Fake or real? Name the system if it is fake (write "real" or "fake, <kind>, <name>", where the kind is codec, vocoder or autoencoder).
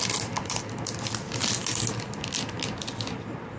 real